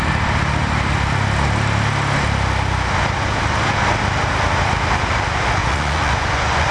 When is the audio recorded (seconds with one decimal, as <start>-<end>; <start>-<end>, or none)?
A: 0.0-5.6